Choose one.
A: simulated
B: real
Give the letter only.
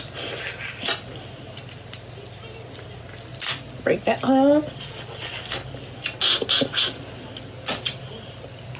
B